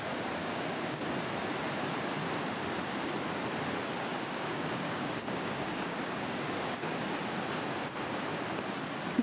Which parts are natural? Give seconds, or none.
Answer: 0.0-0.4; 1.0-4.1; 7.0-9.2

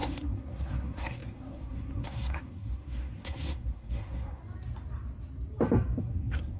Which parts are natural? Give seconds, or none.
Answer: 4.4-6.0

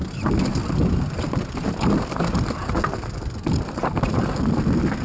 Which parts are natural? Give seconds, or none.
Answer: 0.0-5.0

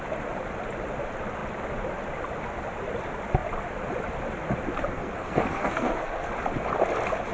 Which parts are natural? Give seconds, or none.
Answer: 0.0-4.9; 6.3-7.3

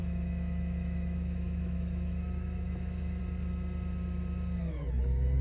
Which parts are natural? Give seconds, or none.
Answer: 3.2-5.4

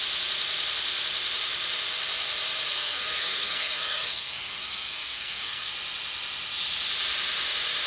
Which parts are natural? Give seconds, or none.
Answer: 0.0-2.7; 5.7-7.9

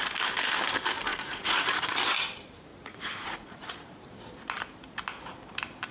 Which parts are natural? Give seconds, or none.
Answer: 0.0-1.1; 1.9-2.7; 4.0-5.9

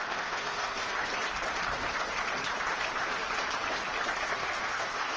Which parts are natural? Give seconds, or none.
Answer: 1.1-4.2